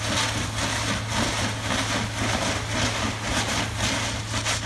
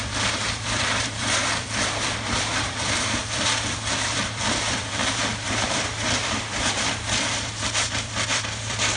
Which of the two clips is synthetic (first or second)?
second